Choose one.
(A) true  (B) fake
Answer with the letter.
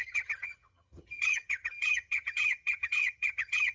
B